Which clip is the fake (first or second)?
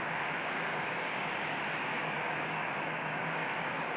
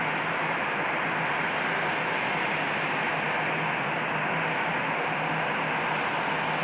first